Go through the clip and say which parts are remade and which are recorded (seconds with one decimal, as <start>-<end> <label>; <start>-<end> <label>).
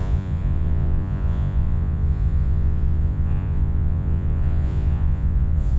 0.0-5.8 remade